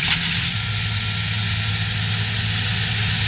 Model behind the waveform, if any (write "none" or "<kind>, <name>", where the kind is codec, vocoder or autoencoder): none